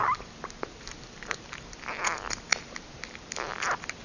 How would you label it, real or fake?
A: real